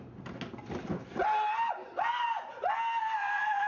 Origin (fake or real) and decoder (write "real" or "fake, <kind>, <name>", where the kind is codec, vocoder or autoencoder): real